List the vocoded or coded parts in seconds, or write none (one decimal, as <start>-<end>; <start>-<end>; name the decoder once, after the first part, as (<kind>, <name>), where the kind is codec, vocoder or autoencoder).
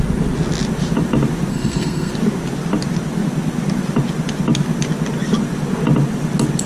1.5-2.1 (codec, SNAC)